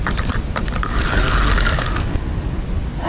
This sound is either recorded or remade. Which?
recorded